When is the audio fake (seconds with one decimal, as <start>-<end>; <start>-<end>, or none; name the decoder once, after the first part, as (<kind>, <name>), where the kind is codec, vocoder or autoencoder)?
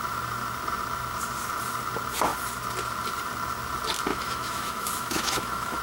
4.1-5.8 (autoencoder, DAC-VAE)